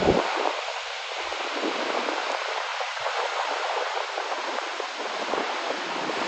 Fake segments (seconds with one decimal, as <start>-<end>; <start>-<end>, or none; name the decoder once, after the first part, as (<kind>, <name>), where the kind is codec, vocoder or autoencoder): none